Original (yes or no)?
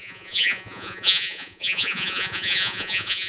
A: no